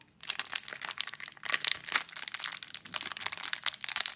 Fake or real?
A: real